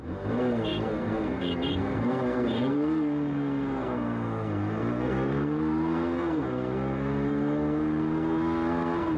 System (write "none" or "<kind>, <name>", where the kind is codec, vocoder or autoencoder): codec, SNAC